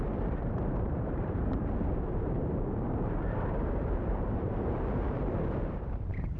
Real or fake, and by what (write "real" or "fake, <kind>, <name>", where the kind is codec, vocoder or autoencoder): fake, vocoder, BigVGAN v2